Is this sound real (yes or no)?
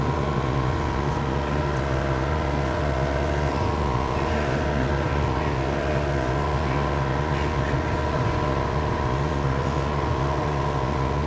no